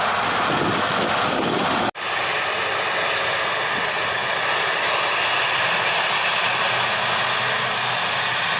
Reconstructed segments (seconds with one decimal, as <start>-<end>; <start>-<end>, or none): none